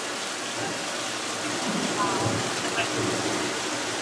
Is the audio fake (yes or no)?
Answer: no